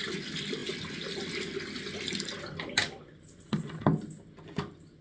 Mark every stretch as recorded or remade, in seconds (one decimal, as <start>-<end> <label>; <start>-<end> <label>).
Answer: 0.0-5.0 recorded